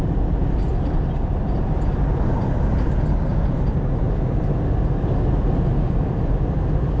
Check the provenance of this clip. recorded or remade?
recorded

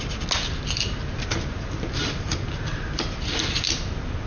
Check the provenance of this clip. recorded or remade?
recorded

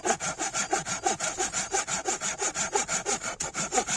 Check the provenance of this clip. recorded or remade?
recorded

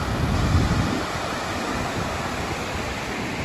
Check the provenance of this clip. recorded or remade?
recorded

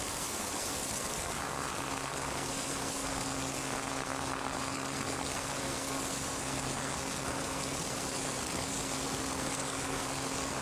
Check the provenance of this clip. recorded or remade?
remade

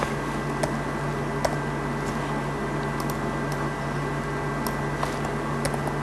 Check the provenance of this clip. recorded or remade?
recorded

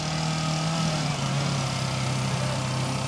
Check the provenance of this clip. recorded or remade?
recorded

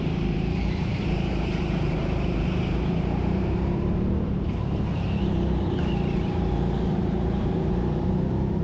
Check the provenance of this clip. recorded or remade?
remade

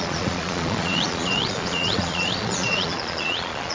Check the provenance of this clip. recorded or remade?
remade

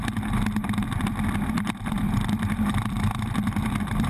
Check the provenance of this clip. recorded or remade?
remade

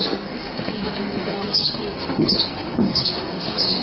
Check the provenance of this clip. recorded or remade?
remade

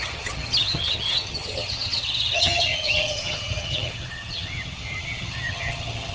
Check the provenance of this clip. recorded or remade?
remade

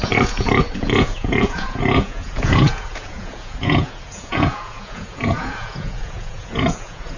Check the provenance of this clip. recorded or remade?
remade